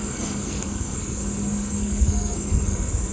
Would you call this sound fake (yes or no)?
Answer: yes